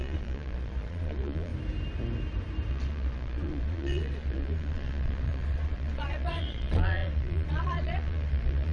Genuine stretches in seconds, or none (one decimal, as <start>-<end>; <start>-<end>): 1.5-2.7